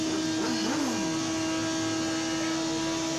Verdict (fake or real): real